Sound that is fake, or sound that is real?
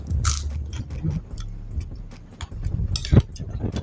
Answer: real